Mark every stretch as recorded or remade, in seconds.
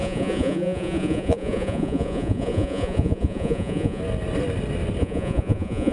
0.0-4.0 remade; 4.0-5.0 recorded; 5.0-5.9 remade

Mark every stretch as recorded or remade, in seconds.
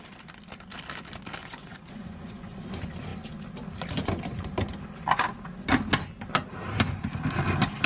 0.0-1.4 recorded; 1.4-2.6 remade; 2.6-7.9 recorded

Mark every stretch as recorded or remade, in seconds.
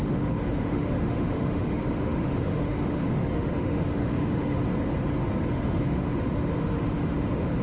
0.0-4.7 remade; 4.7-5.5 recorded; 5.5-7.6 remade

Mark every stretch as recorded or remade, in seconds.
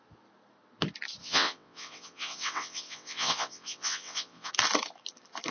0.0-1.2 recorded; 1.2-4.5 remade; 4.5-5.5 recorded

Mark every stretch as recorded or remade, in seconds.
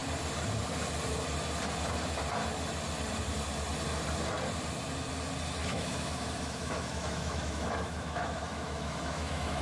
0.0-5.6 recorded; 5.6-9.6 remade